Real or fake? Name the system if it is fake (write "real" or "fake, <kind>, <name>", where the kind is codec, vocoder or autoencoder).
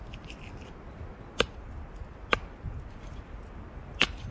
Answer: real